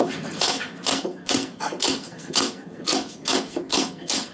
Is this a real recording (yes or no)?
no